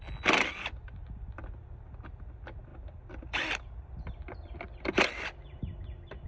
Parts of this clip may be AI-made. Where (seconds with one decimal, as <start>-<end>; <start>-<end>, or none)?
none